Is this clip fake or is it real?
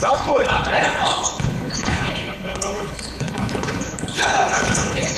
fake